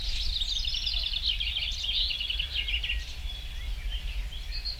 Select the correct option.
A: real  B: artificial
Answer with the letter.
A